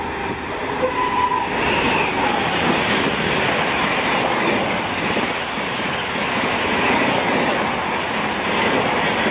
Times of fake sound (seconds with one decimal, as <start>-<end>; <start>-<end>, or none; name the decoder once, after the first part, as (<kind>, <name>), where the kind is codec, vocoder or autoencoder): none